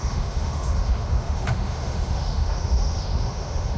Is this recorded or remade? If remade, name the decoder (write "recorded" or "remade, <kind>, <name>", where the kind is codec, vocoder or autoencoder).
remade, autoencoder, DAC-VAE